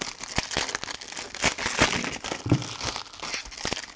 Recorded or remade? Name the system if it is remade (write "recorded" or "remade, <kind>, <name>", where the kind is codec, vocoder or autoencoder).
recorded